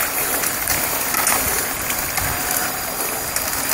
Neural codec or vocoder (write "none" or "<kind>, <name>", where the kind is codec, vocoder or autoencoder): none